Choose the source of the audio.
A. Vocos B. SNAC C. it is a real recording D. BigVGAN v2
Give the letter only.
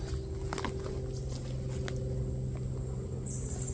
C